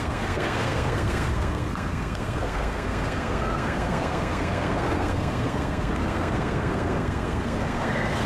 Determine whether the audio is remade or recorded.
remade